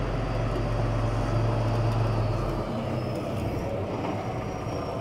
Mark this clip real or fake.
real